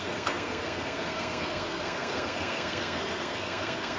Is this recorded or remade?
remade